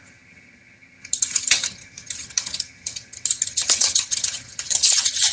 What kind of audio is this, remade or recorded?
remade